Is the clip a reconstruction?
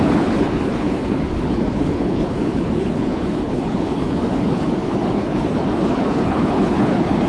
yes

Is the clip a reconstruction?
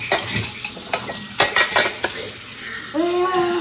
no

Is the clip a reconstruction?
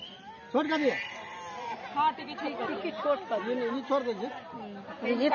no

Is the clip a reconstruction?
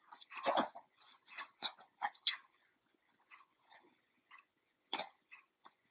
yes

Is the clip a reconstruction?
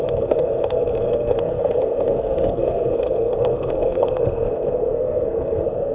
yes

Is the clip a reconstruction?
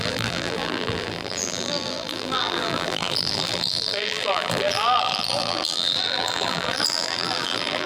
yes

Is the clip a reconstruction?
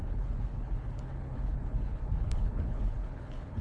yes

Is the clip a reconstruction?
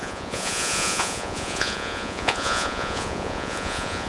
yes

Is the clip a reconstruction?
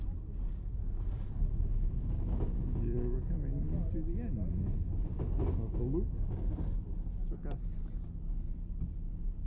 no